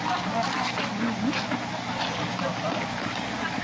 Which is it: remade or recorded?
recorded